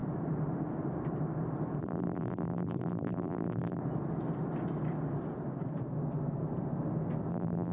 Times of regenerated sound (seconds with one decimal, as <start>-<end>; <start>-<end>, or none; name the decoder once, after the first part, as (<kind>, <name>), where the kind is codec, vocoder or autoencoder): 1.8-3.8 (vocoder, BigVGAN v2); 7.3-7.7